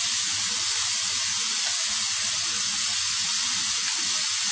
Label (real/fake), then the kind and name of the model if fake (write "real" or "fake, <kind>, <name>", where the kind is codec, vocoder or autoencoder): real